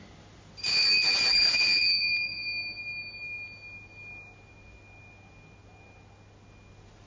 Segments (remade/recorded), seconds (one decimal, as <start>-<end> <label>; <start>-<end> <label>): 0.0-7.1 recorded

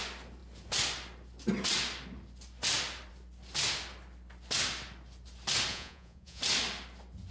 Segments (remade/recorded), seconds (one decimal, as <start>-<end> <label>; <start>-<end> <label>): 0.0-5.7 recorded; 5.7-6.4 remade; 6.4-7.3 recorded

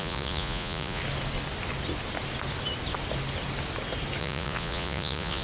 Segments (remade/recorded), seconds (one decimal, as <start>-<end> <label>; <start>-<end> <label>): 0.0-1.0 remade; 1.0-4.2 recorded; 4.2-5.4 remade

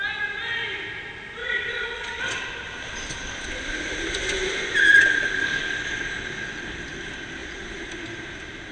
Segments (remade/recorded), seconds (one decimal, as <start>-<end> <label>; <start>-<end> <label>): 0.0-1.4 recorded; 1.4-2.2 remade; 2.2-7.4 recorded; 7.4-8.0 remade; 8.0-8.7 recorded

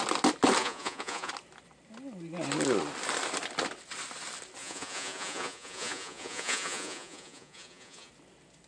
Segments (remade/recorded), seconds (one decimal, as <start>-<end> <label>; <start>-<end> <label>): 0.0-0.6 recorded; 0.6-1.3 remade; 1.3-4.6 recorded; 4.6-8.1 remade; 8.1-8.7 recorded

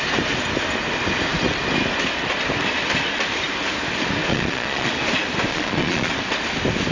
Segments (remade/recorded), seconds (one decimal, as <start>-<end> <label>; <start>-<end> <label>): 0.0-4.3 recorded; 4.3-4.9 remade; 4.9-5.5 recorded; 5.5-6.1 remade; 6.1-6.9 recorded

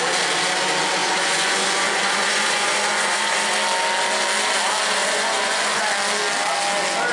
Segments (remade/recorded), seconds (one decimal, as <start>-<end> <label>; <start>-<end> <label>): 0.0-1.0 recorded; 1.0-3.5 remade; 3.5-5.0 recorded; 5.0-5.8 remade; 5.8-7.1 recorded

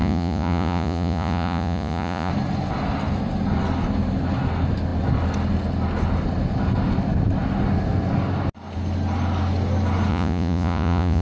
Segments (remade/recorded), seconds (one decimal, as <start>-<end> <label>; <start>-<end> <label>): 0.0-2.3 remade; 2.3-10.1 recorded; 10.1-11.2 remade